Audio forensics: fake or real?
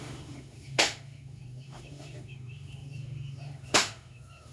fake